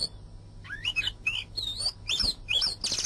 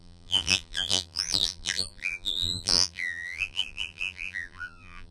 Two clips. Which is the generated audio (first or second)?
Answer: second